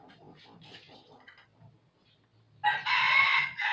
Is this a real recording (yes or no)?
yes